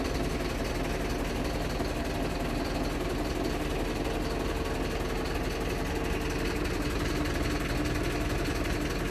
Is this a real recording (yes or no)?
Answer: yes